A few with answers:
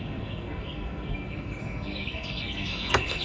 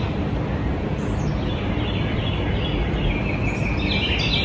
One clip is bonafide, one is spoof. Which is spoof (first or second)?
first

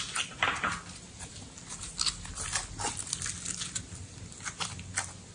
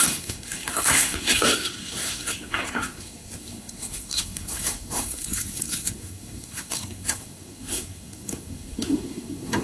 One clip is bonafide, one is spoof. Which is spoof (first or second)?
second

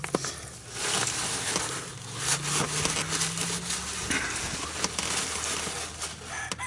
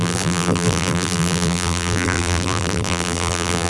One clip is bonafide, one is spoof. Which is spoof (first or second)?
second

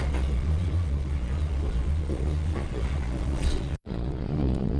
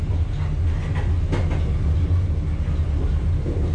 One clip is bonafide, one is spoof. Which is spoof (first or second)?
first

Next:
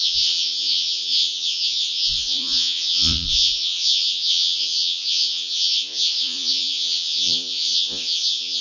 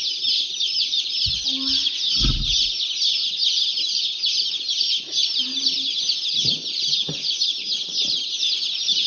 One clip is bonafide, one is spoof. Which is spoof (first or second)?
first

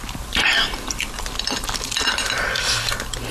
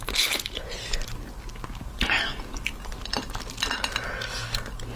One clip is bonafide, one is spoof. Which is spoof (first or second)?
first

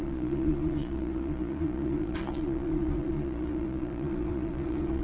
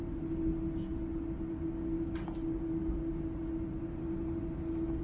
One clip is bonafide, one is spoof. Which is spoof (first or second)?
first